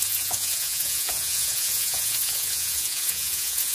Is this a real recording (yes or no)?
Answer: no